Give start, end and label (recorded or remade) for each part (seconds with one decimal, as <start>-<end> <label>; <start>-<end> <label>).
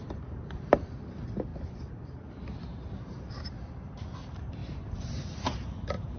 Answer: 0.0-1.5 recorded; 1.5-2.3 remade; 2.3-2.7 recorded; 2.7-3.3 remade; 3.3-4.6 recorded; 4.6-6.2 remade